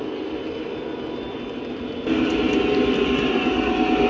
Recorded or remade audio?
recorded